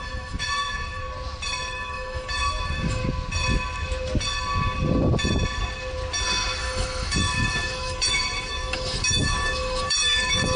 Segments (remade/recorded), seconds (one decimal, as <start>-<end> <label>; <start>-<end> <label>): 0.0-1.0 remade; 1.0-1.7 recorded; 1.7-3.0 remade; 3.0-6.6 recorded; 6.6-10.6 remade